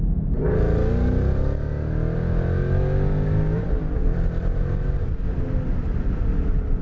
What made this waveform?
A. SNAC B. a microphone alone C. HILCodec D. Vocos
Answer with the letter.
B